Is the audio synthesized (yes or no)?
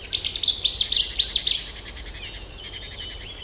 no